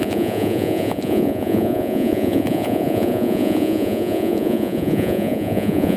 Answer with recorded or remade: remade